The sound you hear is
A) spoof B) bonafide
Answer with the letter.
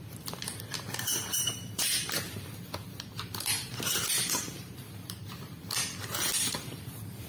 A